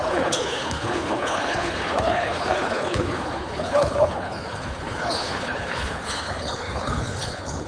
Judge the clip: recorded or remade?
remade